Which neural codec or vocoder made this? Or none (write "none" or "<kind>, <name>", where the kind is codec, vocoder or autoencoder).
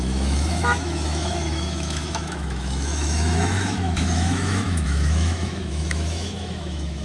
autoencoder, DAC-VAE